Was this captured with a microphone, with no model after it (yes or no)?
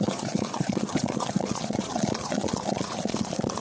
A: no